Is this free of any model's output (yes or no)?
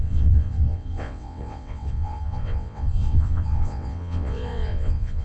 no